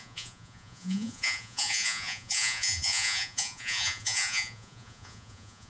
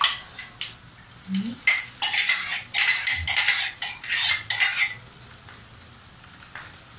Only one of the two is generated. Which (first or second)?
first